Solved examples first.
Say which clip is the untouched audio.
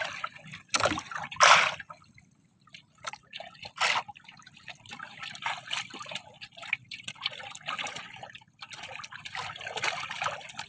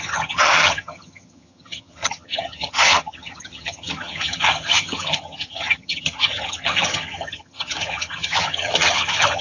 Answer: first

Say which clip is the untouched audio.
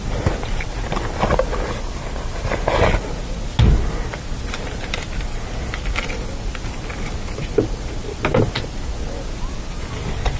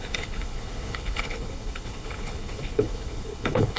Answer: first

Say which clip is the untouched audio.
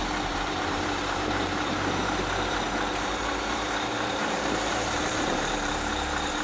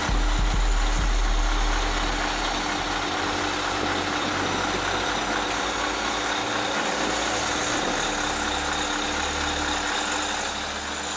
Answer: second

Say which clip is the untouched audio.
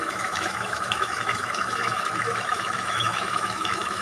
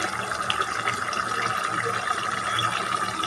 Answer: second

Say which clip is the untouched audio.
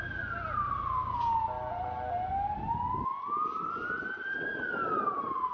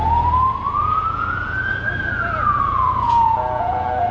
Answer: first